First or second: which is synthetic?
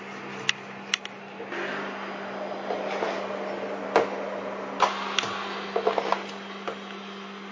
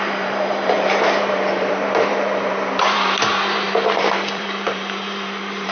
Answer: second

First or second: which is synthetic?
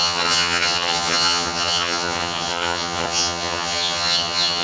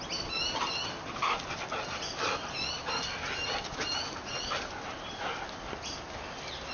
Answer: first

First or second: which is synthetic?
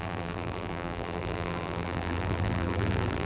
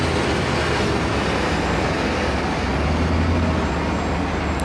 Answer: first